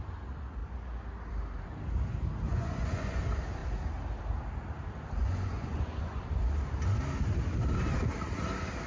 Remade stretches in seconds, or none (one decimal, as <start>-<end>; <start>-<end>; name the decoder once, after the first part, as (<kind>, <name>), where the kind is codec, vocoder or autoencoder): 2.5-3.2 (vocoder, Vocos); 5.2-6.2